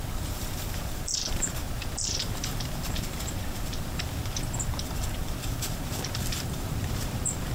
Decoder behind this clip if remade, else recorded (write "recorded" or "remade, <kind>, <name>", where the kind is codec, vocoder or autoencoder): remade, vocoder, BigVGAN v2